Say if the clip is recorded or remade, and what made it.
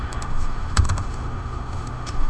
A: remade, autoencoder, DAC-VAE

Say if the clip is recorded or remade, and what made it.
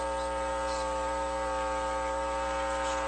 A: recorded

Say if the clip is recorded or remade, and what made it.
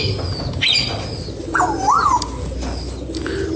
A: recorded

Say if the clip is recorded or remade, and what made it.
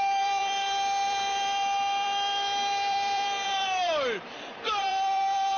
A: remade, vocoder, BigVGAN v2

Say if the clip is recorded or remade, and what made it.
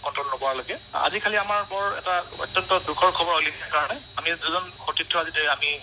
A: recorded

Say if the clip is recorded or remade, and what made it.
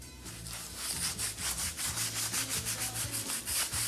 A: recorded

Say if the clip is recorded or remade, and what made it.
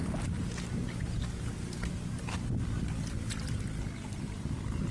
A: recorded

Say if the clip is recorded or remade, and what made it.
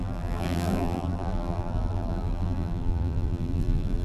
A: remade, vocoder, BigVGAN v2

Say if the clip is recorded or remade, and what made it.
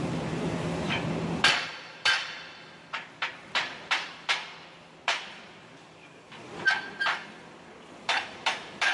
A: remade, vocoder, BigVGAN v2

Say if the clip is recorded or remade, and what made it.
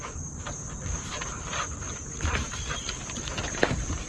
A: remade, vocoder, BigVGAN v2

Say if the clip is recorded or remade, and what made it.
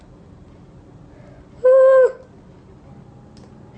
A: recorded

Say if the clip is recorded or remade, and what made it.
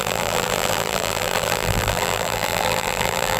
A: remade, vocoder, BigVGAN v2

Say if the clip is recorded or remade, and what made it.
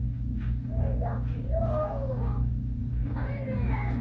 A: remade, codec, DAC